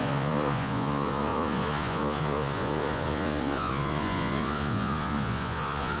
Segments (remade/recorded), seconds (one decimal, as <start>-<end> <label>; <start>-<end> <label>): 0.0-6.0 remade